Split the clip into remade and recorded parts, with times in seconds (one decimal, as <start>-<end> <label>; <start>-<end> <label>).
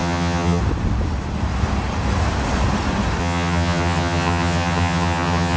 0.0-0.6 remade; 0.6-3.2 recorded; 3.2-5.6 remade